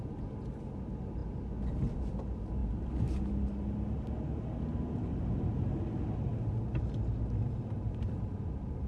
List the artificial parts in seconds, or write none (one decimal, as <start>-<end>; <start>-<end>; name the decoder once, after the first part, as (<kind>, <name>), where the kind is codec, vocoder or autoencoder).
none